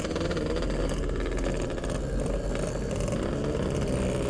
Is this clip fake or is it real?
real